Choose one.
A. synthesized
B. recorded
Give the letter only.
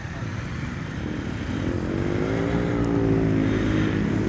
B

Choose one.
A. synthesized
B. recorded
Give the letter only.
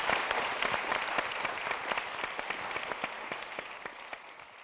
B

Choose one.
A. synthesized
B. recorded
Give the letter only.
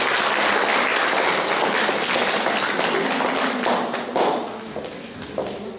B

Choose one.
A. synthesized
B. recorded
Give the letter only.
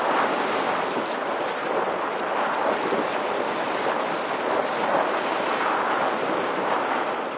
B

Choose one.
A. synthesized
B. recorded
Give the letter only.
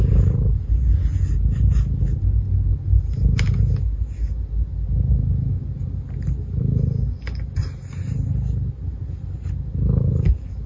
B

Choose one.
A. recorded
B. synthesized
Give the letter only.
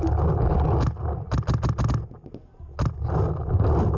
A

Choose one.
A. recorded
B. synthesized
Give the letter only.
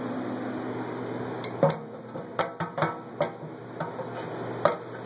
A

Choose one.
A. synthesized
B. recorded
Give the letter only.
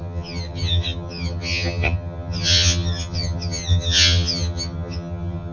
A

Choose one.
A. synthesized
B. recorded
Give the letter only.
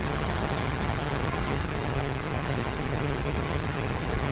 A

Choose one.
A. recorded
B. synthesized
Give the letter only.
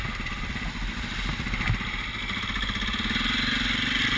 A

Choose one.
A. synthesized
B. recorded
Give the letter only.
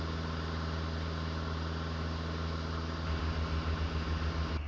B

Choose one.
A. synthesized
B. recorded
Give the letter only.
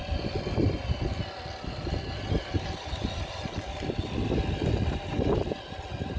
B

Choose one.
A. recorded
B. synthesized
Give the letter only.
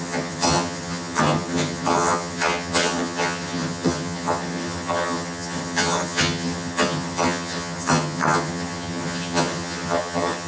B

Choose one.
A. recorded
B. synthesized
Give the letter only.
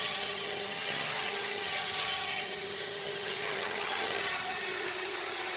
B